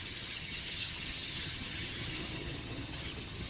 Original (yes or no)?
no